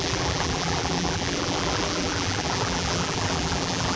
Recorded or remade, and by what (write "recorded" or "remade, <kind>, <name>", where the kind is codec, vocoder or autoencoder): remade, vocoder, BigVGAN v2